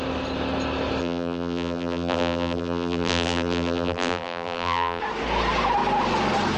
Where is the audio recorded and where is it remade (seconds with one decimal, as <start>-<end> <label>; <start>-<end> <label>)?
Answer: 0.0-1.0 recorded; 1.0-5.0 remade; 5.0-6.6 recorded